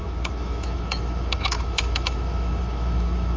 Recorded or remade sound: remade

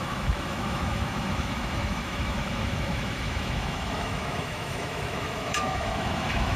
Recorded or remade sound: remade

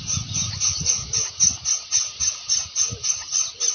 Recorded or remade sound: recorded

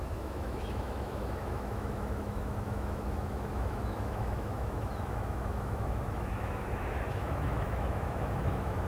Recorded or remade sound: remade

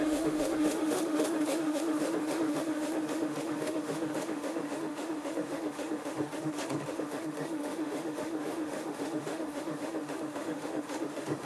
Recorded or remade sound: remade